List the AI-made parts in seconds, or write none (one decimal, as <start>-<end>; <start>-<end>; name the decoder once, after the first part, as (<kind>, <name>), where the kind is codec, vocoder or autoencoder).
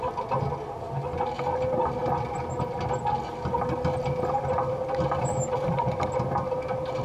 none